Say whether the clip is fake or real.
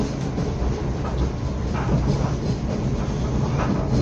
real